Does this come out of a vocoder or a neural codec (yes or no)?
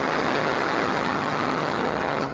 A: yes